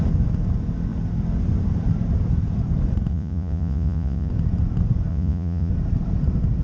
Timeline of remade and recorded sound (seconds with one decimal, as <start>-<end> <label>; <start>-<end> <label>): 0.0-3.1 recorded; 3.1-4.3 remade; 4.3-5.1 recorded; 5.1-5.7 remade; 5.7-6.6 recorded